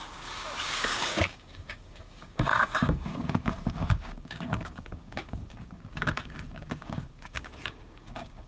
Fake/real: fake